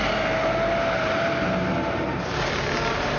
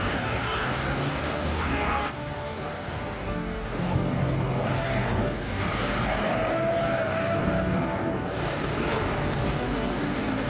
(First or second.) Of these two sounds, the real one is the first